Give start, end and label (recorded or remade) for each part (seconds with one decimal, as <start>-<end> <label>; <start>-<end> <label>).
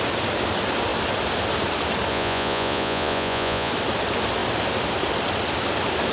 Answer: 0.0-2.1 recorded; 2.1-3.7 remade; 3.7-6.1 recorded